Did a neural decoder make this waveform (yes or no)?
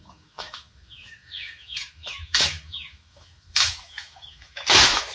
yes